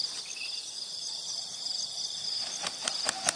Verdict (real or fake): real